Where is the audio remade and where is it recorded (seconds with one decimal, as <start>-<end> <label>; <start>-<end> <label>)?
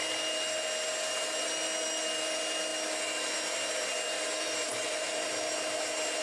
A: 0.0-6.2 recorded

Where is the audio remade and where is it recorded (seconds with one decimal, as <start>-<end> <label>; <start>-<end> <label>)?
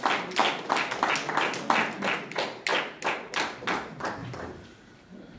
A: 0.0-4.2 recorded; 4.2-5.4 remade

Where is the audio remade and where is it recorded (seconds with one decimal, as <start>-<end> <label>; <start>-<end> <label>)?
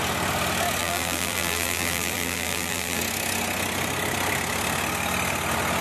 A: 0.0-0.8 recorded; 0.8-3.0 remade; 3.0-5.8 recorded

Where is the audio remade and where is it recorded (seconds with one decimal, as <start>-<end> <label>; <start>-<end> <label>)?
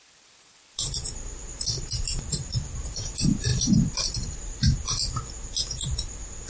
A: 0.0-6.5 remade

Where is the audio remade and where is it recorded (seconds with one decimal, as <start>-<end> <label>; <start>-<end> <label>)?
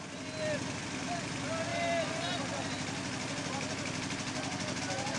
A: 0.0-5.2 recorded